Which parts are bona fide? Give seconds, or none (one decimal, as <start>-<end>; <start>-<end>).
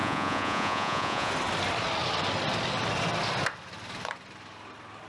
1.3-5.1